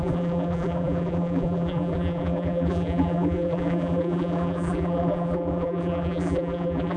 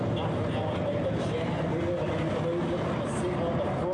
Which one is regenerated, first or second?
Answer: first